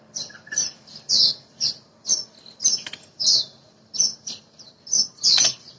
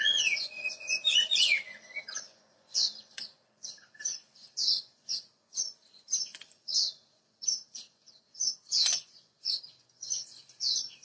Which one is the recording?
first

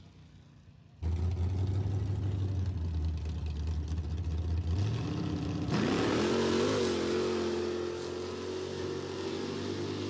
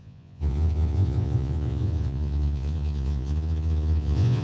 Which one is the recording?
first